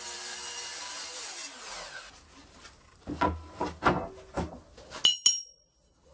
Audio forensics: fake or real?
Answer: real